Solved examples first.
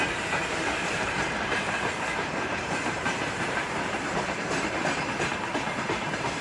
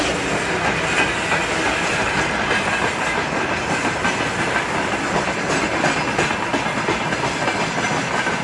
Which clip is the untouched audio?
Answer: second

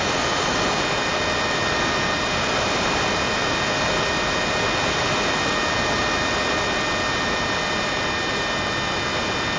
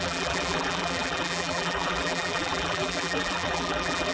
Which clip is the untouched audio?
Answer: first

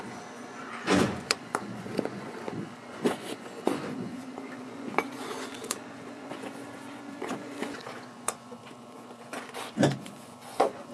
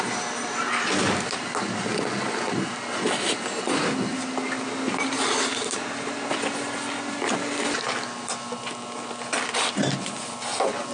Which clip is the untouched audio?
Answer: second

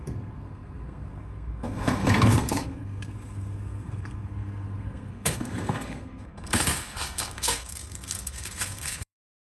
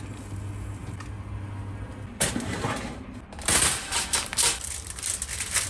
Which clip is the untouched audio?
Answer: second